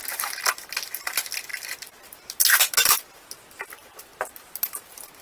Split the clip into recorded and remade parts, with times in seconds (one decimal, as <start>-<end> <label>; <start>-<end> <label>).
0.0-5.2 recorded